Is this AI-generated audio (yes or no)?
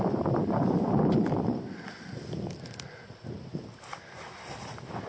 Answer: no